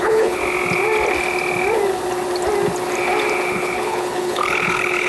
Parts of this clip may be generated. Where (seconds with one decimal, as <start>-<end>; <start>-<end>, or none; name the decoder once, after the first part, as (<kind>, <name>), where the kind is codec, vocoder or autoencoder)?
0.0-0.4 (codec, HILCodec); 3.5-5.1